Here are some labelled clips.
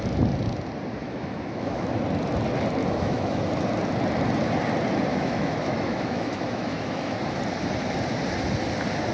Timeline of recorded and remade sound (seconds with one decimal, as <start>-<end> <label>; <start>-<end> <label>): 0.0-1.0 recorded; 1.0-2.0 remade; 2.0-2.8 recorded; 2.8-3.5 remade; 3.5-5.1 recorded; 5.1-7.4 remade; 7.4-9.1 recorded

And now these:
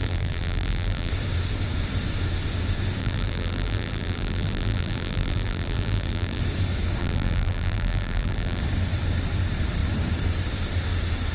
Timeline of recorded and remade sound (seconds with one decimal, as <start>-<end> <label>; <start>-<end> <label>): 0.0-1.1 remade; 1.1-3.0 recorded; 3.0-6.4 remade; 6.4-7.0 recorded; 7.0-8.6 remade; 8.6-11.3 recorded

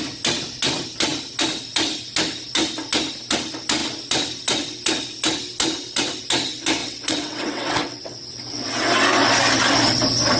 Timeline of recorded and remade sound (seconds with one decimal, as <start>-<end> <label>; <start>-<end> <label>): 0.0-6.8 recorded; 6.8-8.7 remade; 8.7-10.4 recorded